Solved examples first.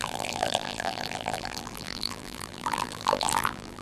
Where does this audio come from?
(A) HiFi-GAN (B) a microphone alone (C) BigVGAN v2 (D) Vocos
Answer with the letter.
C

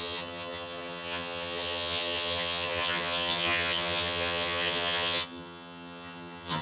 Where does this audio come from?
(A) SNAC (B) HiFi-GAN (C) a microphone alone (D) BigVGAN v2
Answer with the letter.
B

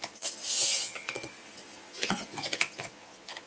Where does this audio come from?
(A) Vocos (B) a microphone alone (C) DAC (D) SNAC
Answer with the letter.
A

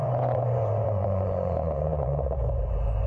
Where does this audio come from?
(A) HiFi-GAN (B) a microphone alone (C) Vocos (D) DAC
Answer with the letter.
C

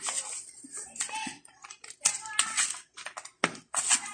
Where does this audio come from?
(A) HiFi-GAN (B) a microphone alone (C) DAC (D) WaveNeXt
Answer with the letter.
B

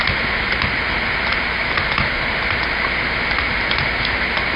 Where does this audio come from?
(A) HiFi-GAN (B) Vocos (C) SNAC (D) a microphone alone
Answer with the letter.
D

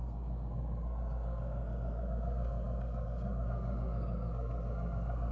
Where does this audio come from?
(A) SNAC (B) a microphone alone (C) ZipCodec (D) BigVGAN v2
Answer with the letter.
A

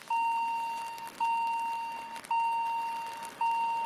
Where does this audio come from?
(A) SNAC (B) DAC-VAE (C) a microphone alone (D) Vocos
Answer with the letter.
C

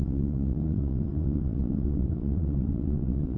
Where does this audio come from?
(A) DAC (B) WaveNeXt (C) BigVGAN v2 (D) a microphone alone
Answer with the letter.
B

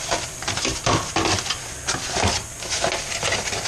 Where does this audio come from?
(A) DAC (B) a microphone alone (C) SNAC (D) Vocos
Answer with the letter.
B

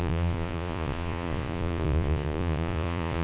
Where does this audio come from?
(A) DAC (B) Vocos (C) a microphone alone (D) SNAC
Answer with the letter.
B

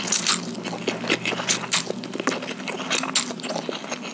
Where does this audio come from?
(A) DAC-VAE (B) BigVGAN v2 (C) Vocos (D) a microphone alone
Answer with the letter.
D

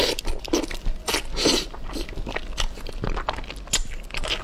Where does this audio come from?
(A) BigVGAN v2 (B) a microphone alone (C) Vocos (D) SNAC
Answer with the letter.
B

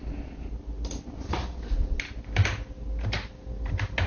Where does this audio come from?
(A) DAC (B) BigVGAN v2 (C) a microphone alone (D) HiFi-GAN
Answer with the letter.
C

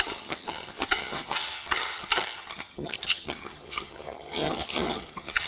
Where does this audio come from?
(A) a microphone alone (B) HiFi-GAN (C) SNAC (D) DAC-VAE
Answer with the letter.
B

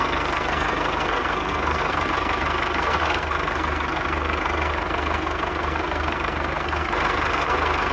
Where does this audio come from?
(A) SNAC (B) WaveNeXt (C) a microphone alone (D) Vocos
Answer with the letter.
A